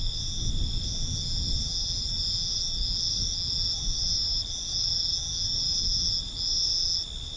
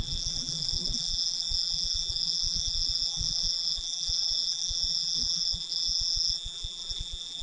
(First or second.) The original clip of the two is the first